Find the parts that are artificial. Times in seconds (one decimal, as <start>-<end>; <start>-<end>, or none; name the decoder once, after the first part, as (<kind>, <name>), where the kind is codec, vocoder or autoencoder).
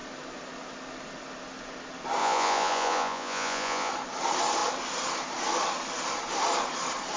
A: 2.2-3.9 (vocoder, Vocos)